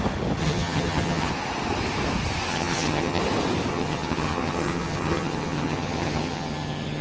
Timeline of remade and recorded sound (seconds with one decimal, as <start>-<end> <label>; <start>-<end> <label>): 0.0-0.4 recorded; 0.4-1.3 remade; 1.3-2.5 recorded; 2.5-3.2 remade; 3.2-3.7 recorded; 3.7-7.0 remade